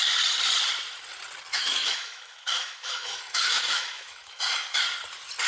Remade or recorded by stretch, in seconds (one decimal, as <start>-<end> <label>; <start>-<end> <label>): 0.0-1.5 recorded; 1.5-4.8 remade; 4.8-5.5 recorded